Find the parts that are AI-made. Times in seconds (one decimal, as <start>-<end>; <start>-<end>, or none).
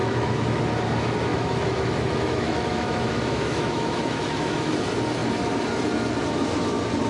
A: 0.0-0.6; 1.3-4.7